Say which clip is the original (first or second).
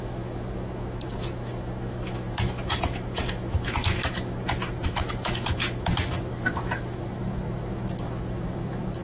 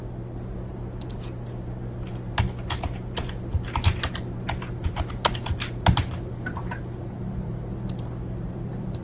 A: second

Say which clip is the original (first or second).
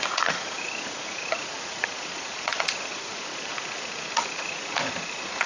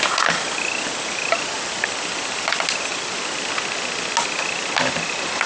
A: second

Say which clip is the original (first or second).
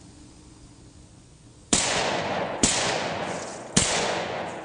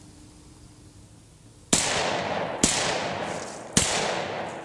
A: second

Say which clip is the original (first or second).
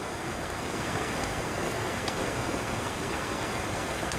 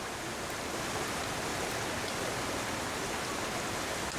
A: second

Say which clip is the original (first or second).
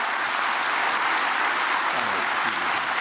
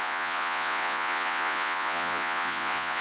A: first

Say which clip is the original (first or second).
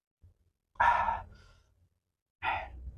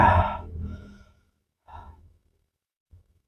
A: first